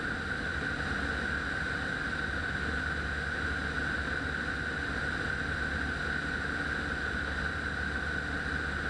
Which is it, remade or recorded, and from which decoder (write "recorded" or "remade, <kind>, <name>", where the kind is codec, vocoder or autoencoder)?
recorded